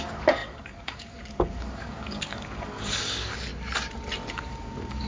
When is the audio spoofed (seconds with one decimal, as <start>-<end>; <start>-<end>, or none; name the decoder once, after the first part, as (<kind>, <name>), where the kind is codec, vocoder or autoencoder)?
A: 0.0-3.5 (codec, DAC); 4.3-5.1